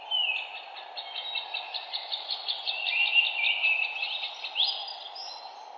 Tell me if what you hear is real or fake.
real